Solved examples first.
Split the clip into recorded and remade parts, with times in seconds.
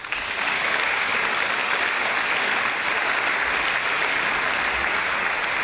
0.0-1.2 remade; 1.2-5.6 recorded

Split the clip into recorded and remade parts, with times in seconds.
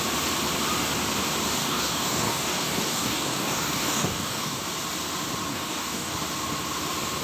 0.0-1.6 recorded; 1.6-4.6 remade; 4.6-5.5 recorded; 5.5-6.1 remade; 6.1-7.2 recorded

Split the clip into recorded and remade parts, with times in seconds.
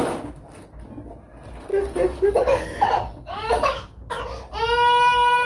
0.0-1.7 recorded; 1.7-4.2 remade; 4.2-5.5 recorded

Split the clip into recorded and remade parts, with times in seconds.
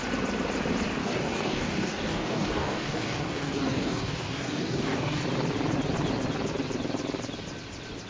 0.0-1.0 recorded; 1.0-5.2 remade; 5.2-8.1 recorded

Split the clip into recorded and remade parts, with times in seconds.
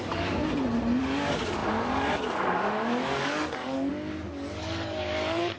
0.0-0.4 remade; 0.4-1.0 recorded; 1.0-5.6 remade